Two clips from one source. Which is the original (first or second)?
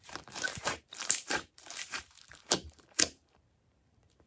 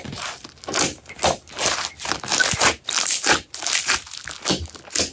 second